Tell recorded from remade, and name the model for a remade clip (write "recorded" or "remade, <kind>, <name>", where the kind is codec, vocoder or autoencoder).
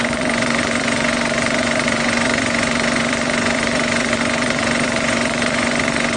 remade, vocoder, Vocos